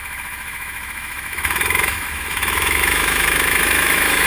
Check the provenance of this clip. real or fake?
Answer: fake